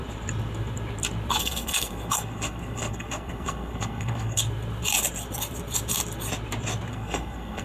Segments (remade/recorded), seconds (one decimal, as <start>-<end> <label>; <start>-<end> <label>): 0.0-1.4 recorded; 1.4-4.4 remade; 4.4-6.9 recorded; 6.9-7.6 remade